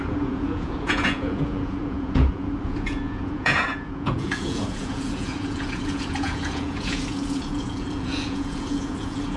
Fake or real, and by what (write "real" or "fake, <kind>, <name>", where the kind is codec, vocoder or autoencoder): fake, vocoder, Vocos